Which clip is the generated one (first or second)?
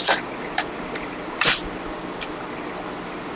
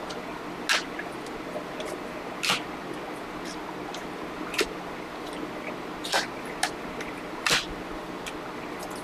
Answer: first